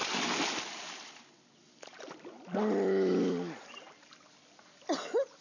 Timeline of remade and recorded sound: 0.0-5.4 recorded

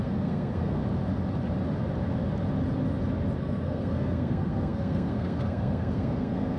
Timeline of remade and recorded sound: 0.0-0.8 remade; 0.8-3.4 recorded; 3.4-6.6 remade

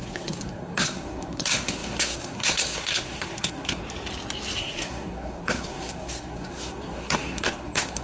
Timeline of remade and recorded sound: 0.0-3.8 remade; 3.8-4.6 recorded; 4.6-8.0 remade

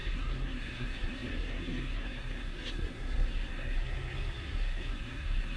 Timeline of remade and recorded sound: 0.0-5.6 remade

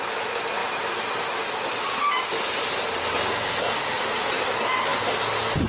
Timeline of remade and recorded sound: 0.0-5.7 recorded

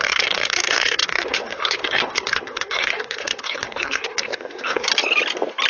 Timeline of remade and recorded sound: 0.0-4.9 remade; 4.9-5.7 recorded

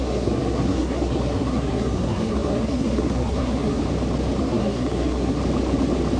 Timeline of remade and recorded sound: 0.0-3.8 remade; 3.8-4.4 recorded; 4.4-5.4 remade; 5.4-6.2 recorded